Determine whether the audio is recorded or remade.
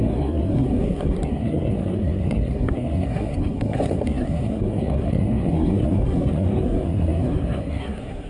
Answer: remade